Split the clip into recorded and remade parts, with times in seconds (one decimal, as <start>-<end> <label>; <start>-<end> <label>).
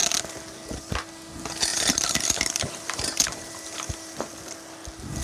0.0-1.7 recorded; 1.7-4.3 remade; 4.3-5.2 recorded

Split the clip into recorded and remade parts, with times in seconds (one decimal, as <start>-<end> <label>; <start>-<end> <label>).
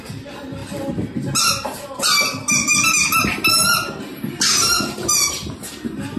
0.0-6.2 recorded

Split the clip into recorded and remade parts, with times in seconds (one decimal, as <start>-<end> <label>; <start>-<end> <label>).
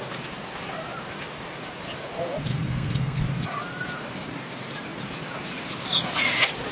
0.0-2.6 recorded; 2.6-3.2 remade; 3.2-6.7 recorded